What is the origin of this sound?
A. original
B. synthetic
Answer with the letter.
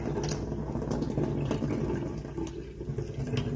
A